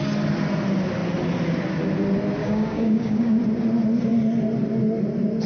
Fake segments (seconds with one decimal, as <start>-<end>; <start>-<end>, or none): 2.4-3.4